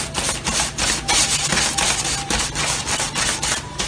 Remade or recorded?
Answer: recorded